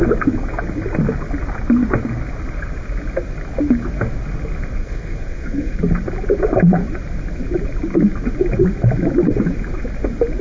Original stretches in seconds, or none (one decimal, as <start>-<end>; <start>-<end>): 0.0-4.8; 5.8-10.4